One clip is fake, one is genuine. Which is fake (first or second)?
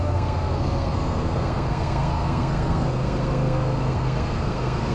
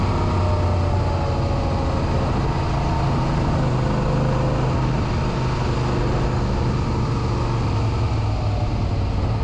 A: first